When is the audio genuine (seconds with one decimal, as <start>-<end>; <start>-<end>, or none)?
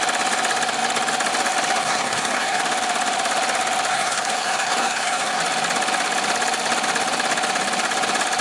0.0-1.8; 2.6-3.9; 5.4-8.4